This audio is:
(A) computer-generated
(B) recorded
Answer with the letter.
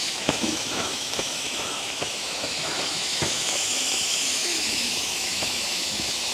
A